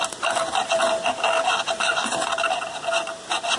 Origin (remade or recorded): recorded